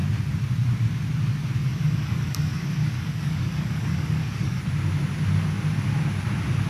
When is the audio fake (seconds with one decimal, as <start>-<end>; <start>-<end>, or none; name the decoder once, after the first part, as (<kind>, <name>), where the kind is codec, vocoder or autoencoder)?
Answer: 1.6-4.6 (codec, DAC)